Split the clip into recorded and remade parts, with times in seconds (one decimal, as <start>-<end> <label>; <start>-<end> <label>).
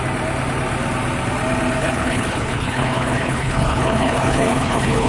0.0-1.8 recorded; 1.8-5.1 remade